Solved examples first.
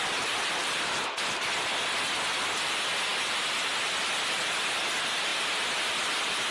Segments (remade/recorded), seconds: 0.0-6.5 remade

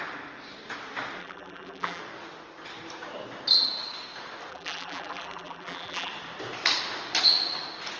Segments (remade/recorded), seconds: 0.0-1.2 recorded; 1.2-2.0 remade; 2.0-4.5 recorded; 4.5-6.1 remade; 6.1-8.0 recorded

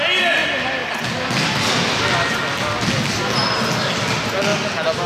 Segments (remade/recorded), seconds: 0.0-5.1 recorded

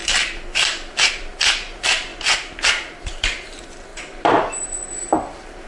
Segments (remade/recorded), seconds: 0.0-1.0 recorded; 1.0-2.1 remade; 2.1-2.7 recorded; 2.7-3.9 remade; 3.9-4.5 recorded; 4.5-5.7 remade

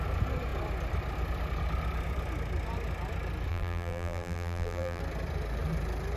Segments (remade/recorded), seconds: 0.0-3.5 recorded; 3.5-5.0 remade; 5.0-6.2 recorded

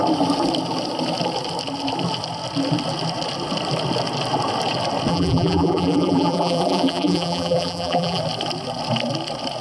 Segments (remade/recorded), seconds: 0.0-5.1 recorded; 5.1-8.2 remade; 8.2-9.6 recorded

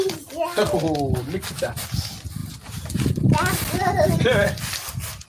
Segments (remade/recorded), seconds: 0.0-5.3 recorded

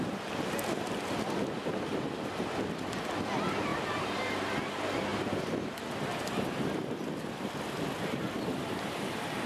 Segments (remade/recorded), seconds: 0.0-3.7 recorded; 3.7-4.2 remade; 4.2-9.5 recorded